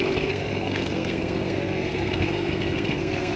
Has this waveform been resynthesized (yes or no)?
yes